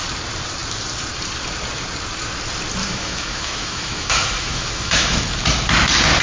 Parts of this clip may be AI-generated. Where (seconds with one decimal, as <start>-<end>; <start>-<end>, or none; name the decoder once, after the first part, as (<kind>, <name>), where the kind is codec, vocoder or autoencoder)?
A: 2.8-5.2 (autoencoder, DAC-VAE)